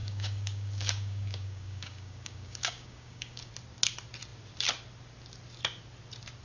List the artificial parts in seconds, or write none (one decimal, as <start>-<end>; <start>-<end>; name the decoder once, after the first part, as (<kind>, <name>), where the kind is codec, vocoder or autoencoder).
0.0-3.5 (codec, DAC)